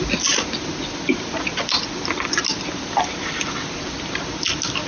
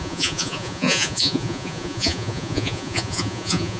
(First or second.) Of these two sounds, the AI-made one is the second